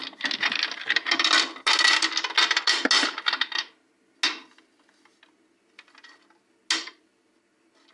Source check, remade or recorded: recorded